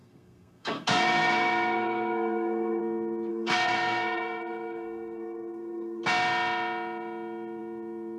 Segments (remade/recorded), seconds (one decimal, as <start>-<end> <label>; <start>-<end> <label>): 0.0-2.8 remade; 2.8-3.3 recorded; 3.3-6.0 remade; 6.0-8.2 recorded